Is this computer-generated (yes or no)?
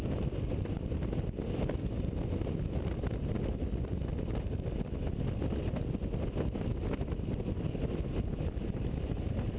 no